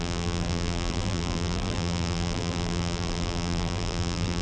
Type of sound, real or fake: fake